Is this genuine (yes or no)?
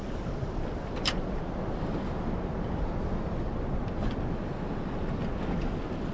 yes